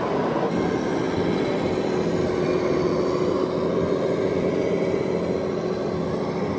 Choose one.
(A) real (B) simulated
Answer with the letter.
A